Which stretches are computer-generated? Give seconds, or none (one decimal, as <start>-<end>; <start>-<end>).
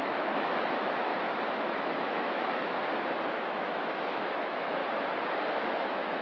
0.0-1.1; 1.6-2.7; 3.4-4.8; 5.5-6.2